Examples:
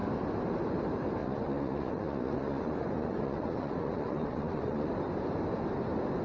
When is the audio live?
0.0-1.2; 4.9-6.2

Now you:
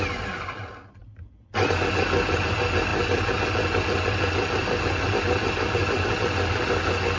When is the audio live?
0.0-7.2

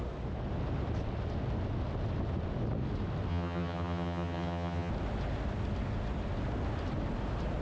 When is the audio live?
0.0-3.3; 4.9-7.6

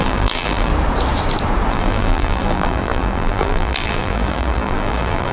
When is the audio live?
0.7-1.7

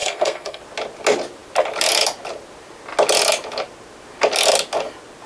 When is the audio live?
0.6-5.3

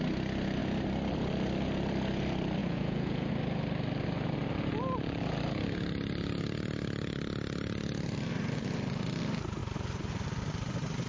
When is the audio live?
0.0-2.6; 3.3-11.1

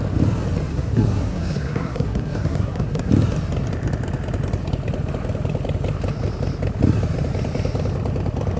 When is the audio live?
0.0-0.7; 3.1-8.6